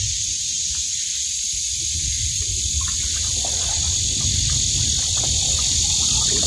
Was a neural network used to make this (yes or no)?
no